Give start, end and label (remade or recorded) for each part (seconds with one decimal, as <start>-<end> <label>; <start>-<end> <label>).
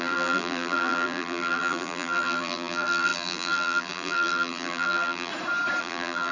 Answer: 0.0-5.3 remade; 5.3-5.8 recorded; 5.8-6.3 remade